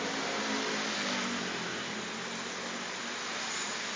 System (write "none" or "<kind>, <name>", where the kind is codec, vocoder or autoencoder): none